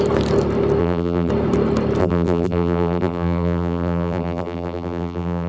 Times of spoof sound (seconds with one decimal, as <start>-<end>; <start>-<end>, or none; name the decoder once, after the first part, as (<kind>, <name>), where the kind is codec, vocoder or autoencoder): 0.8-1.3 (vocoder, BigVGAN v2); 2.0-5.5